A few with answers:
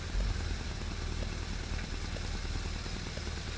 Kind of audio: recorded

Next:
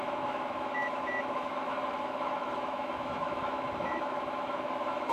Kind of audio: remade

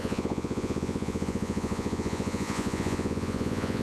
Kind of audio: remade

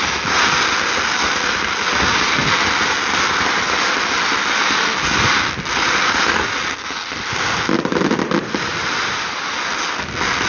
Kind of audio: recorded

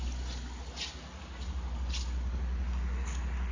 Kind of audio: recorded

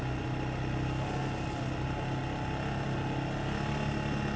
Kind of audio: recorded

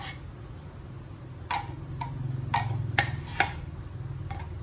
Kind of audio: recorded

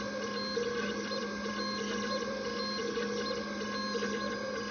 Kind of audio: recorded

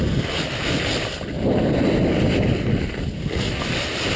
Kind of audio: recorded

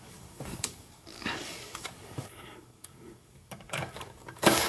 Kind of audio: remade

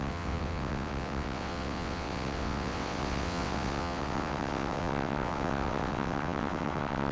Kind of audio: remade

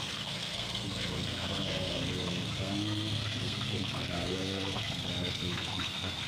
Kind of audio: remade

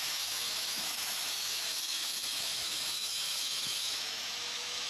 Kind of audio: remade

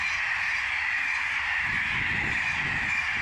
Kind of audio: recorded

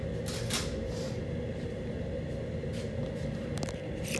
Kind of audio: recorded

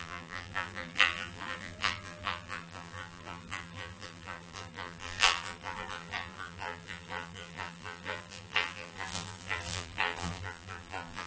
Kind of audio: remade